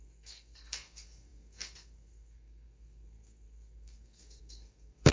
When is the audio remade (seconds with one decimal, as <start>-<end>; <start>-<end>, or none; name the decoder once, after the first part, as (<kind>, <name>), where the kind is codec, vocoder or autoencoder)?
0.0-5.1 (codec, SNAC)